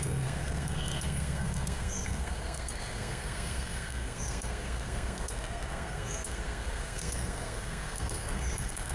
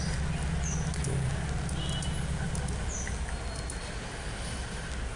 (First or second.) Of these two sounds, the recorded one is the second